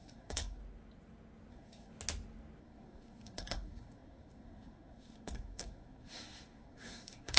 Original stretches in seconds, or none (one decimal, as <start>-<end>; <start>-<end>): 0.6-1.5; 1.9-2.6